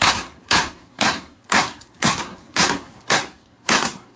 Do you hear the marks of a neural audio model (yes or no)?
yes